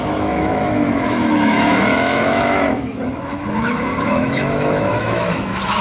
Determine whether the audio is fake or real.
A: fake